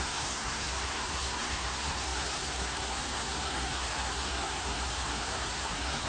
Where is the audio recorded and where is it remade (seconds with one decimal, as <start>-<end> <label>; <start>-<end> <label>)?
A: 0.0-6.1 remade